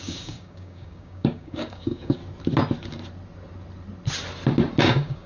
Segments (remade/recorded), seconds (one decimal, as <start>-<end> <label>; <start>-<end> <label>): 0.0-2.2 remade; 2.2-4.8 recorded; 4.8-5.3 remade